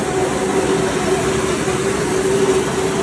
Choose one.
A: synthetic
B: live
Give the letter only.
B